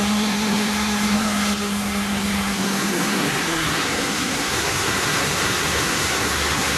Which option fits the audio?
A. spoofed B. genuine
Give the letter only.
A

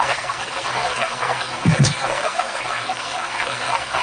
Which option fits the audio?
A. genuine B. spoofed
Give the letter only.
B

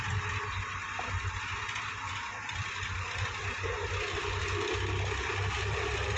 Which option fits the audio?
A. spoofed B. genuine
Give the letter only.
B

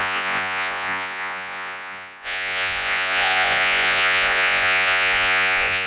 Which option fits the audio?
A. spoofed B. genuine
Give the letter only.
A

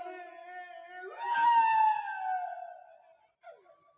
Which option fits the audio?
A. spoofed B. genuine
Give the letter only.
B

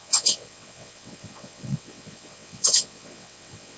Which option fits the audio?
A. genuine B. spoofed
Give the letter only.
B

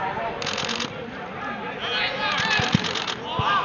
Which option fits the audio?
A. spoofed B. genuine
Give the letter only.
B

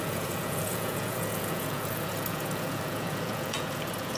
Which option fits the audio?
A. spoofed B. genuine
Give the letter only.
A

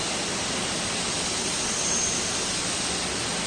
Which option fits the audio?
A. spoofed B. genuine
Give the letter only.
B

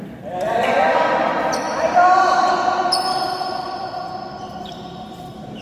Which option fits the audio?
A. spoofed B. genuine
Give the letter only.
A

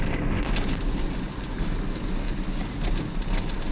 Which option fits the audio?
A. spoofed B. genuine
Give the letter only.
B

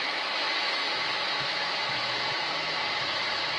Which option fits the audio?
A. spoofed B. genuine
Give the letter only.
A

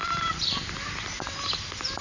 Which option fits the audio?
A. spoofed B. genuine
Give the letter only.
B